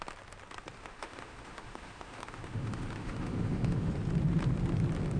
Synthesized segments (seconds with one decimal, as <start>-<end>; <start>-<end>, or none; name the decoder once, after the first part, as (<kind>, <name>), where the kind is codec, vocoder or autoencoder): 0.8-3.9 (autoencoder, DAC-VAE)